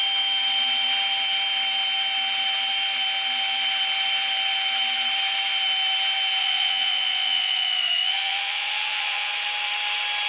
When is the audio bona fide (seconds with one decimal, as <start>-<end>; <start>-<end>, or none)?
0.0-6.4; 9.3-10.3